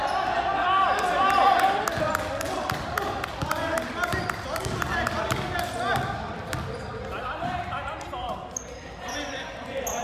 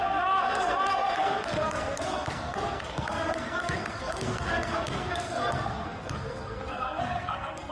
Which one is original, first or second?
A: first